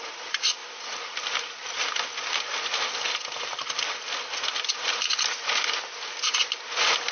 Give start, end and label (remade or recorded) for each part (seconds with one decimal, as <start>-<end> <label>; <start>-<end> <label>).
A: 0.0-7.1 recorded